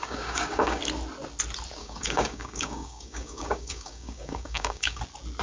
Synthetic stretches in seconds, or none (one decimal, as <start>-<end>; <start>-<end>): 0.0-0.8; 1.8-5.0